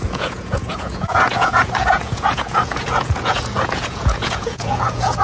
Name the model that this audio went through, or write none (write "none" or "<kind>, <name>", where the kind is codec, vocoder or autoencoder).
vocoder, Vocos